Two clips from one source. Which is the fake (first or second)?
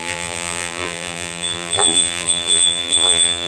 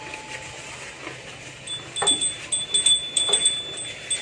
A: first